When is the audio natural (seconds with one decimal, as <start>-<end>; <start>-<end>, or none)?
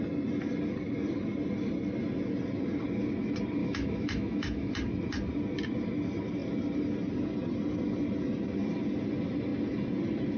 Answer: 0.0-3.6; 4.7-10.4